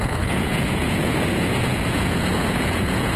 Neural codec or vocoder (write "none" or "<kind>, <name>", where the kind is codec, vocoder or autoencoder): vocoder, Vocos